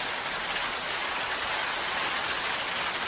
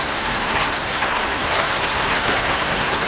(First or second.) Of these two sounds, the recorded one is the first